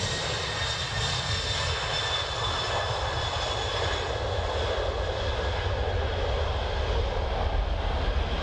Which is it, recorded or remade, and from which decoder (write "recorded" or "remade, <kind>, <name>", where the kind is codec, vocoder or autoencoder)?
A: recorded